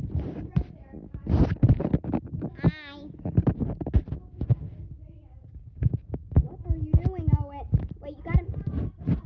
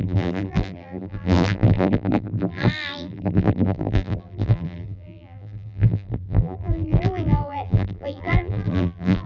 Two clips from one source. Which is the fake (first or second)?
second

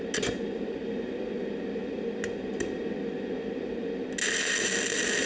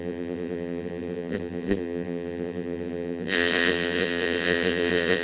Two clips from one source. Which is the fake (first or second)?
second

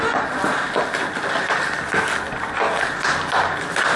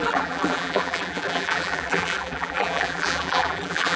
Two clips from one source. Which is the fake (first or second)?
second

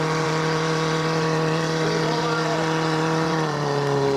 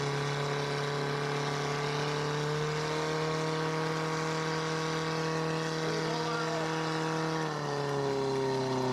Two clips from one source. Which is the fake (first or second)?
first